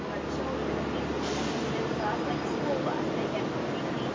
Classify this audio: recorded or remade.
recorded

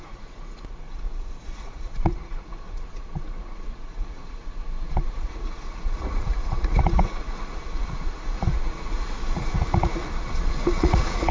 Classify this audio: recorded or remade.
remade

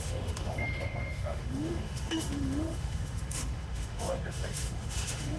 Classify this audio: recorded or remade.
remade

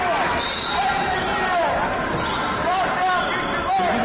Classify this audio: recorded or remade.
recorded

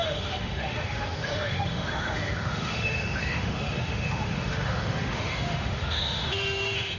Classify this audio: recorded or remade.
remade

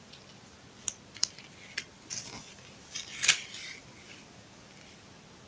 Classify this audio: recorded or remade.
recorded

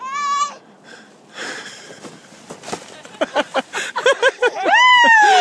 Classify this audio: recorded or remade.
remade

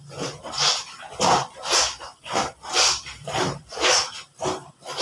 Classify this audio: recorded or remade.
recorded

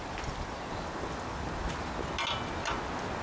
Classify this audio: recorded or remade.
recorded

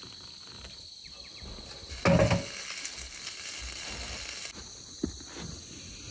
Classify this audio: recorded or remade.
recorded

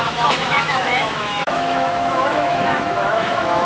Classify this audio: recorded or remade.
remade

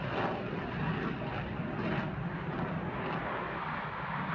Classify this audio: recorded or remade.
recorded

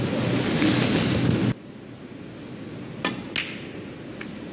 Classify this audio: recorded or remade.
recorded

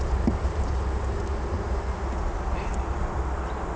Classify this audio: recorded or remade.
recorded